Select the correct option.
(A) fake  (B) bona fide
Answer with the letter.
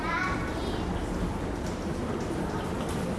B